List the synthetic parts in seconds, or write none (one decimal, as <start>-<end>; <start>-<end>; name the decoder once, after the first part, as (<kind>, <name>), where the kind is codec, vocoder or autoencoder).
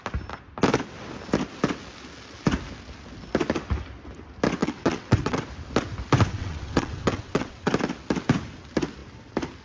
4.6-5.4 (vocoder, WaveNeXt); 6.3-7.7